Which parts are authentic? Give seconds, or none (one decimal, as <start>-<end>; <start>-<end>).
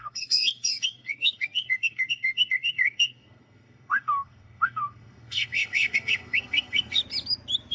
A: 7.0-7.7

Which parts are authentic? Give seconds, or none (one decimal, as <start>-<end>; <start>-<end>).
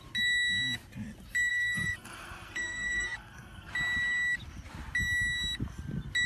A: 0.0-1.5; 3.7-6.3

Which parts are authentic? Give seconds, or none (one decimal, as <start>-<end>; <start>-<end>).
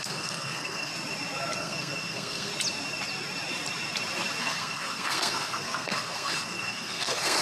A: 0.9-1.6; 2.5-4.4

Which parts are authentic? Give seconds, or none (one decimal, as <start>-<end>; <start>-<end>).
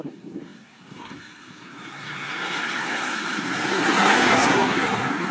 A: none